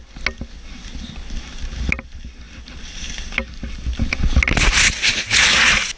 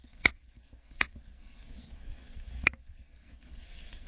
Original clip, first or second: first